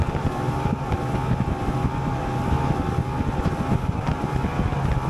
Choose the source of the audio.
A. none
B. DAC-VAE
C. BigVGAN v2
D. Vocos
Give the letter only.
A